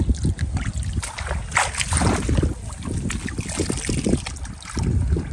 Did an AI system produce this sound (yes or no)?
no